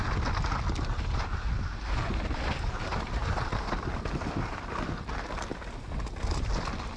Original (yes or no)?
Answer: yes